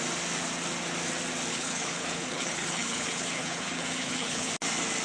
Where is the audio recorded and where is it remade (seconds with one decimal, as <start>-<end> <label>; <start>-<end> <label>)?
0.0-1.5 recorded; 1.5-4.5 remade; 4.5-5.0 recorded